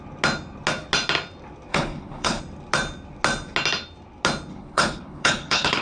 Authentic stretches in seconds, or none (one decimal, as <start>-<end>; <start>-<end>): 0.0-1.7; 2.4-4.5